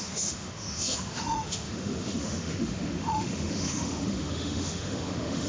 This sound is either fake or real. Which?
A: fake